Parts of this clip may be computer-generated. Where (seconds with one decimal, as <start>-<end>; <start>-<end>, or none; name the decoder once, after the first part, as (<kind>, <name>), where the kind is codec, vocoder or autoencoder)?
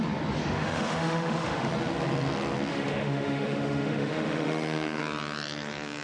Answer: 0.4-1.7 (autoencoder, DAC-VAE); 2.7-5.0